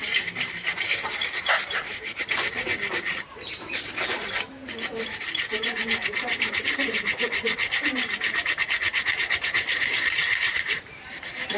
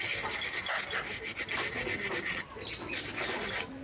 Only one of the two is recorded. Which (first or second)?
second